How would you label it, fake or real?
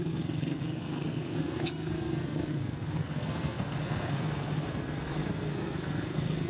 fake